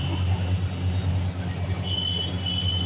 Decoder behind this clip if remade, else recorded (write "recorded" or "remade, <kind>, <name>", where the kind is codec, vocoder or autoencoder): recorded